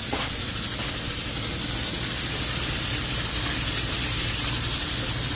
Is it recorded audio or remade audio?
recorded